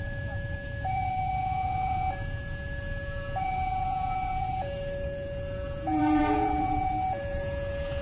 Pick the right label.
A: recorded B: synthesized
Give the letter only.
B